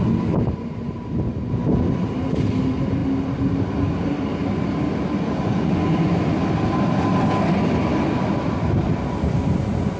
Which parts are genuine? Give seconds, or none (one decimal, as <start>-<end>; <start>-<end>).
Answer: 0.0-5.4; 6.1-10.0